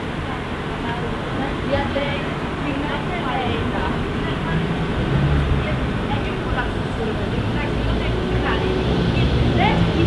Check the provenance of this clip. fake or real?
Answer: real